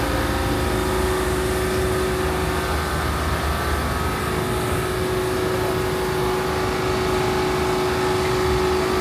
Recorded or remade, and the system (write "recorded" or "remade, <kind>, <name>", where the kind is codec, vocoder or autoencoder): recorded